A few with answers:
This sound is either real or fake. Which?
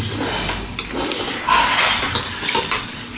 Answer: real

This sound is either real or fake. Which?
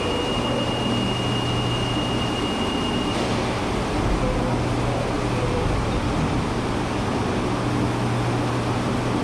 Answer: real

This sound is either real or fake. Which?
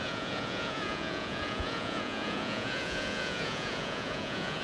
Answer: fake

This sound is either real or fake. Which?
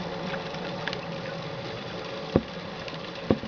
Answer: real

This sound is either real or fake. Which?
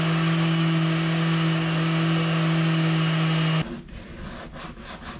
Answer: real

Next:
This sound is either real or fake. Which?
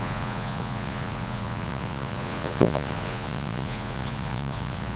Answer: fake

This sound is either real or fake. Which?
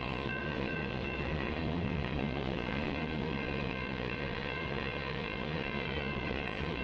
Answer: fake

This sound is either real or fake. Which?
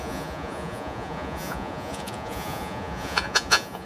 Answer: fake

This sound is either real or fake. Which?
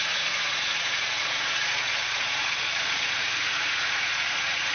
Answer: fake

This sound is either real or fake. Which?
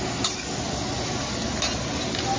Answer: real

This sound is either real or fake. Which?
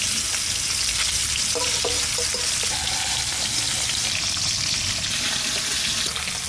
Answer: real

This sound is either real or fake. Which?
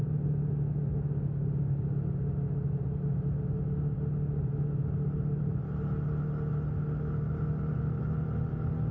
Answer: real